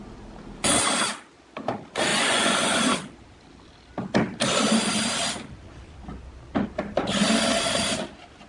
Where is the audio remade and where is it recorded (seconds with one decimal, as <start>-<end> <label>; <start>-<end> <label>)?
0.0-2.1 recorded; 2.1-2.8 remade; 2.8-8.5 recorded